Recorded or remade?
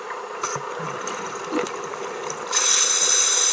recorded